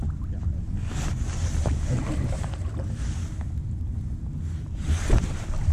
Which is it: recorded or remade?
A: recorded